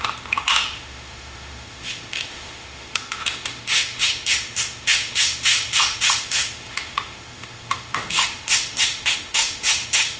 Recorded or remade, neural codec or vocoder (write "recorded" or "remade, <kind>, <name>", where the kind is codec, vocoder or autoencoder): remade, autoencoder, DAC-VAE